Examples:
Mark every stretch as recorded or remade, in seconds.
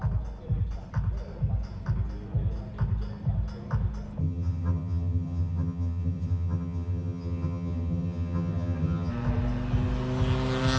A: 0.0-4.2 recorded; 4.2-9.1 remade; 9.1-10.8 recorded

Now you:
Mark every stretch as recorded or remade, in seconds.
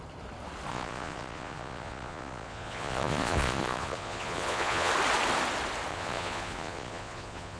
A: 0.0-0.7 recorded; 0.7-4.9 remade; 4.9-5.9 recorded; 5.9-7.6 remade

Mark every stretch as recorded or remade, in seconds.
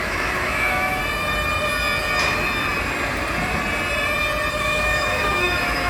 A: 0.0-1.0 remade; 1.0-4.5 recorded; 4.5-5.9 remade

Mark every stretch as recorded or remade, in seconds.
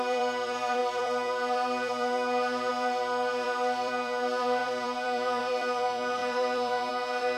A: 0.0-7.4 remade